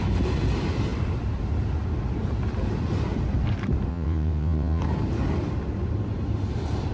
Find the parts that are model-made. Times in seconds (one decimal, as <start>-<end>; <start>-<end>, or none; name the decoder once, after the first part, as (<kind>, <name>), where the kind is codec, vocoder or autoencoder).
3.9-4.8 (vocoder, WaveNeXt)